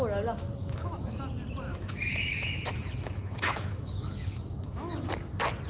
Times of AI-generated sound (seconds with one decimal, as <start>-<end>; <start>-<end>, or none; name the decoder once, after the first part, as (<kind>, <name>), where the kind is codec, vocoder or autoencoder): 0.6-1.2 (autoencoder, DAC-VAE); 1.7-5.1